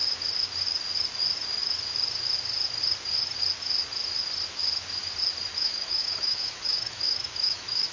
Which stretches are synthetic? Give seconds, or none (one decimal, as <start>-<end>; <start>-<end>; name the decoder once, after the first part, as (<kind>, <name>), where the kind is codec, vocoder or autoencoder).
5.5-7.9 (autoencoder, DAC-VAE)